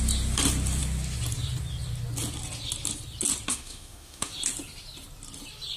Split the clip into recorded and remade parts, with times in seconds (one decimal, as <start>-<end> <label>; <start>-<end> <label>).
0.0-3.5 recorded; 3.5-4.3 remade; 4.3-5.8 recorded